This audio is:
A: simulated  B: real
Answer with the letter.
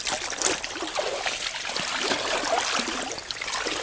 B